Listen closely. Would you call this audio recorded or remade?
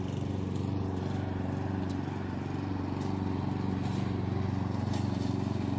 recorded